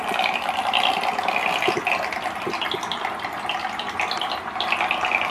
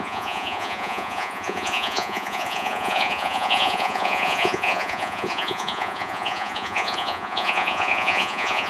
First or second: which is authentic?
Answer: first